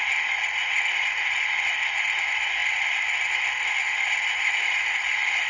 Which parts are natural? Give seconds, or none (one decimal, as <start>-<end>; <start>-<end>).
0.0-5.5